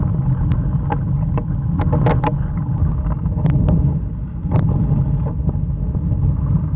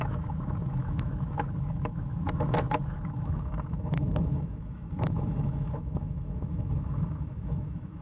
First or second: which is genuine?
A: first